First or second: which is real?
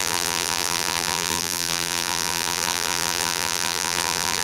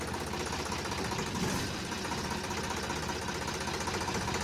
second